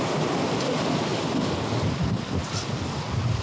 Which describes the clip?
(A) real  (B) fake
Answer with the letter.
A